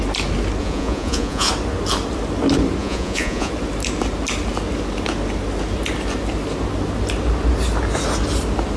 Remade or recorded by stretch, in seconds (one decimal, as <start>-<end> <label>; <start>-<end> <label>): 0.0-0.6 recorded; 0.6-1.5 remade; 1.5-2.8 recorded; 2.8-3.5 remade; 3.5-8.8 recorded